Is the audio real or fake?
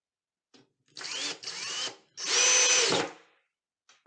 real